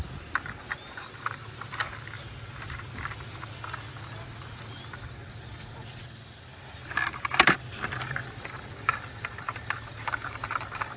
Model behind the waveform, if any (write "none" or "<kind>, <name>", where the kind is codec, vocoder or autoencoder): none